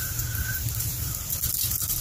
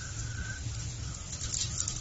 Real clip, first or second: second